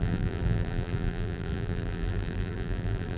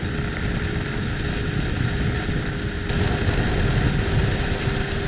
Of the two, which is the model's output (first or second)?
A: first